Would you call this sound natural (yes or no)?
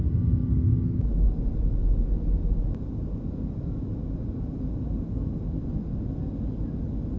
yes